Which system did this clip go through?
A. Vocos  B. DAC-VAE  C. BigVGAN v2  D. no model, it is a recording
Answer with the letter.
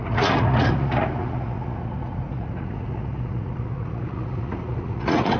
A